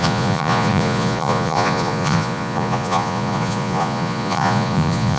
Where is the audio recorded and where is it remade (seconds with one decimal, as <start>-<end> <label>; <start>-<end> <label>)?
0.0-5.2 remade